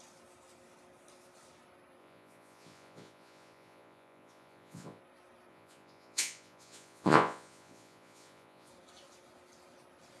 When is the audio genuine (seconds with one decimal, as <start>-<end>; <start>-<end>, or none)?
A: 0.0-2.0; 5.0-5.5; 8.7-10.2